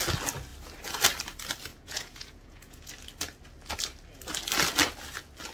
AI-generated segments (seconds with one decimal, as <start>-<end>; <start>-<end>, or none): 1.7-2.9